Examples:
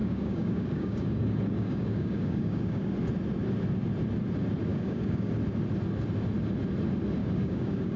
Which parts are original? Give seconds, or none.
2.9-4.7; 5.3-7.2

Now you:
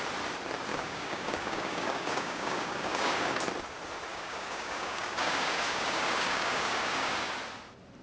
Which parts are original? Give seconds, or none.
0.0-0.7; 3.4-4.1; 7.3-8.0